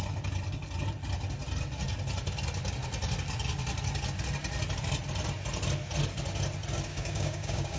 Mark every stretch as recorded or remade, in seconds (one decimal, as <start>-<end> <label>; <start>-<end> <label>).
0.0-6.9 recorded; 6.9-7.8 remade